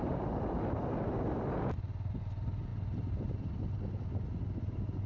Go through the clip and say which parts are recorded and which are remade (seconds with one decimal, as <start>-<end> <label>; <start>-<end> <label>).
0.0-5.1 recorded